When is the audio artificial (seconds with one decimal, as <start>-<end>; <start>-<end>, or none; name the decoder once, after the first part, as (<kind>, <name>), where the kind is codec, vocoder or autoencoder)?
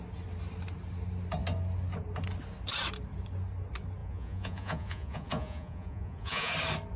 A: 4.0-6.5 (vocoder, Vocos)